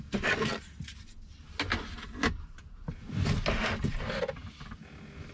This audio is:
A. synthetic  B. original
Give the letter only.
B